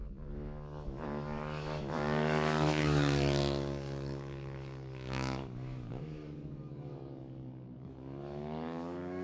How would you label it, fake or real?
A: fake